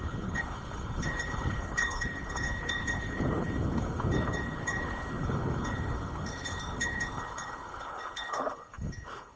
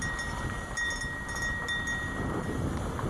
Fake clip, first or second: first